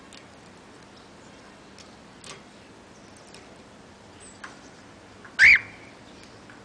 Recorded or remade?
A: recorded